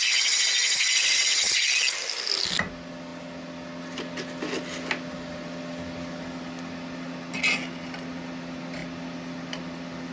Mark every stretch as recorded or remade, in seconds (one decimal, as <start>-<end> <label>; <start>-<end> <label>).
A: 0.0-10.1 recorded